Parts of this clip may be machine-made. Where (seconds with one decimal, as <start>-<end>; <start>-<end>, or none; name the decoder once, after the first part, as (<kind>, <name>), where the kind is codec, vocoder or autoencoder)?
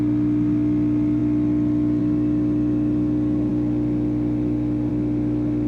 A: none